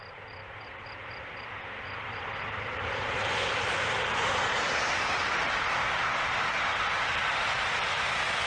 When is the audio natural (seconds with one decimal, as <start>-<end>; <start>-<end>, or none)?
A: 0.0-2.1; 5.7-8.5